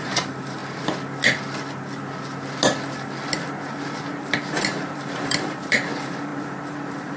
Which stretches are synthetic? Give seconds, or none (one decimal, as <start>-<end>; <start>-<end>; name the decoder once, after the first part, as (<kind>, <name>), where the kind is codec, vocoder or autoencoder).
0.0-0.6 (vocoder, BigVGAN v2); 4.2-7.2